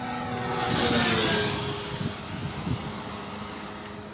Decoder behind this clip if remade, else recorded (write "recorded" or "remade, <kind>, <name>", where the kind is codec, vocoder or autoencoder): recorded